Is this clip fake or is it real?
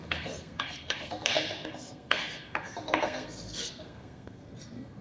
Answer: fake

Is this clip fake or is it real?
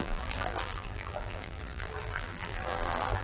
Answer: fake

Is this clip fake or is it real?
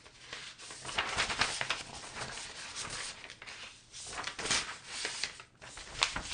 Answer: real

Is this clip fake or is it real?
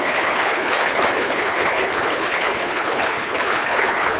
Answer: fake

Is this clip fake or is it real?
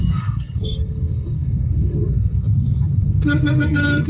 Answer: fake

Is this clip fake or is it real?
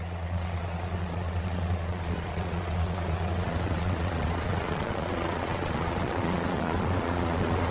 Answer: fake